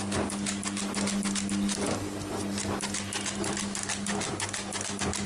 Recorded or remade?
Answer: recorded